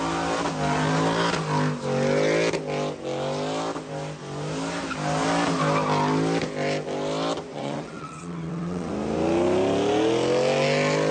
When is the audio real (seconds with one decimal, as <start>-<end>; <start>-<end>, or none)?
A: 0.0-7.5; 8.9-11.1